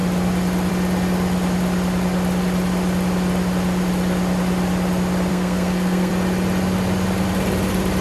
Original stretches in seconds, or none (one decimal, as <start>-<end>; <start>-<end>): 0.0-5.3; 6.1-8.0